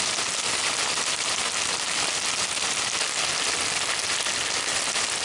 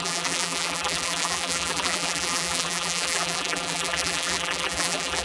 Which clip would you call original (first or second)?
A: first